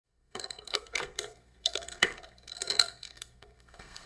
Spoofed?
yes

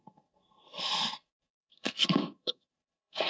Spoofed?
yes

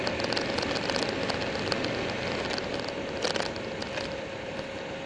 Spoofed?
no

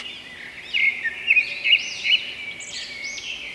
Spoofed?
no